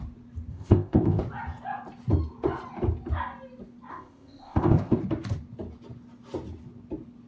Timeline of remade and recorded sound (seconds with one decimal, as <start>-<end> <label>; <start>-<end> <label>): 0.0-0.5 recorded; 0.5-1.2 remade; 1.2-3.9 recorded; 3.9-5.0 remade; 5.0-7.3 recorded